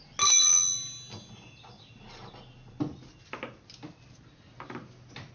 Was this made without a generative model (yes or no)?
yes